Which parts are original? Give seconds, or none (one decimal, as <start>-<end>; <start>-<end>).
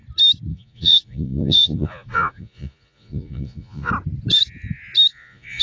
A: 0.0-0.5; 3.9-5.1